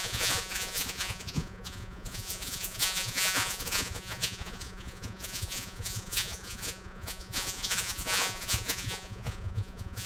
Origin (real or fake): fake